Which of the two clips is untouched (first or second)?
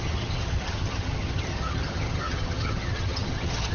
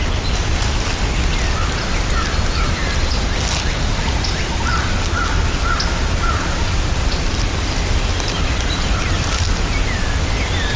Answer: second